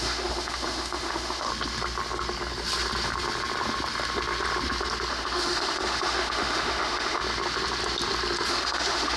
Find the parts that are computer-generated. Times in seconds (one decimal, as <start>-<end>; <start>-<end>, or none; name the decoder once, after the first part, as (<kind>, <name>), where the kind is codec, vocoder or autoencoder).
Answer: 0.0-1.5 (autoencoder, DAC-VAE); 5.1-7.2; 8.5-9.2